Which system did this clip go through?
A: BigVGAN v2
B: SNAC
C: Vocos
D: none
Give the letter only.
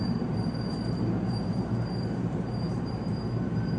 A